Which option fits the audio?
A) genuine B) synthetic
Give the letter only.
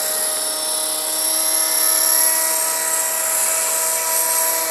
A